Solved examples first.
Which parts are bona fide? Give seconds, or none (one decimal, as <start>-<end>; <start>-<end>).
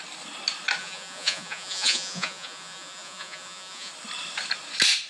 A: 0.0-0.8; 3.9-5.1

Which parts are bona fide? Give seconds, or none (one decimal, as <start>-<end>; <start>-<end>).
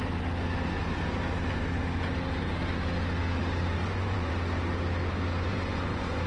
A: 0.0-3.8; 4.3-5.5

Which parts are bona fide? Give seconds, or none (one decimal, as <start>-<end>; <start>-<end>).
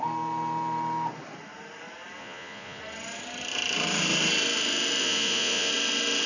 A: 0.0-2.2; 2.8-5.0; 5.7-6.3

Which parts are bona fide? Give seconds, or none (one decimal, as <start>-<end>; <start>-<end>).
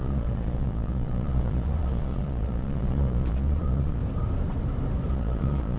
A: 4.0-5.1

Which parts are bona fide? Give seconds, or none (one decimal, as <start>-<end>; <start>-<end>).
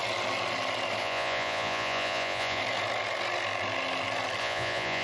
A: 0.0-1.0; 2.6-4.4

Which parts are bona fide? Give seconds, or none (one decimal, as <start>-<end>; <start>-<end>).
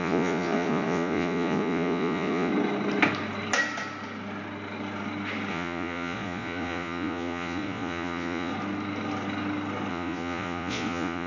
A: 2.5-5.5; 8.5-9.9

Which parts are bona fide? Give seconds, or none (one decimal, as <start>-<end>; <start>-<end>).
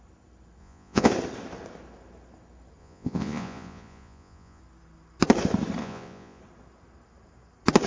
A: 0.0-0.6; 1.1-2.8; 4.6-5.8; 6.4-7.9